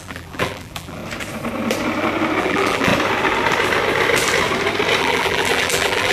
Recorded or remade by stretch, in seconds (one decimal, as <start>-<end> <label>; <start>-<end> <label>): 0.0-1.0 remade; 1.0-2.4 recorded; 2.4-2.9 remade; 2.9-5.0 recorded; 5.0-6.1 remade